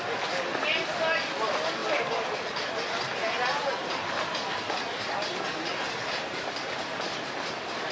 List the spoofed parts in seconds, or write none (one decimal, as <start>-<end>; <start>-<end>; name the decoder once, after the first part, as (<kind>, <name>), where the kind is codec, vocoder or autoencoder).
none